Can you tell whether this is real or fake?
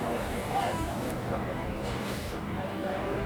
fake